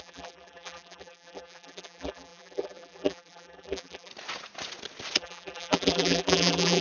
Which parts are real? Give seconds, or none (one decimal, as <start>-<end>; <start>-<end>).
4.1-5.2